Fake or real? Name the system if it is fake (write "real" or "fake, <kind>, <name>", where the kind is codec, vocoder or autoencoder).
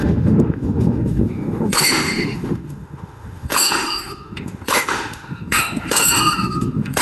fake, autoencoder, DAC-VAE